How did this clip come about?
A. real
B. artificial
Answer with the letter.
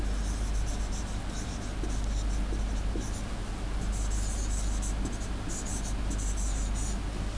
A